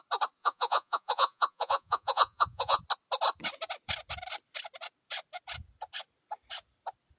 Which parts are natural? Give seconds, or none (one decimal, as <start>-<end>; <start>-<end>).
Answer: 0.0-0.4; 2.8-7.2